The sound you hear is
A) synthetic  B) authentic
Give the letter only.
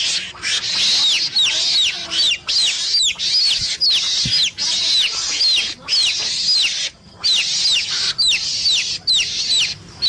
B